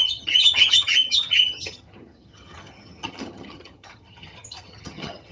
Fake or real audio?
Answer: fake